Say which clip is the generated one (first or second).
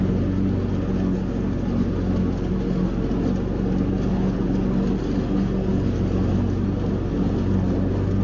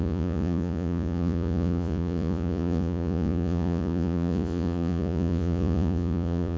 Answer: second